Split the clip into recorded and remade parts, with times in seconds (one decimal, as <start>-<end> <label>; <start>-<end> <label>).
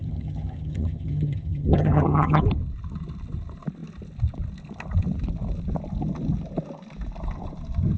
0.0-2.4 remade; 2.4-8.0 recorded